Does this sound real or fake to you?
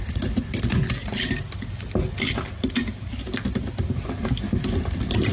real